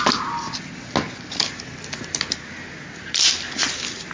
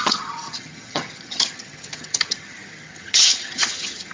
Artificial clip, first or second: second